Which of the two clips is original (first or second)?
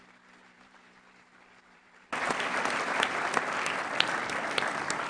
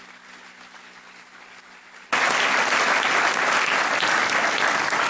second